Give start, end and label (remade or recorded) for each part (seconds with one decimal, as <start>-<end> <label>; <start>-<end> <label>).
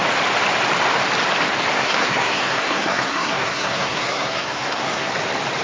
0.0-1.7 recorded; 1.7-5.1 remade; 5.1-5.6 recorded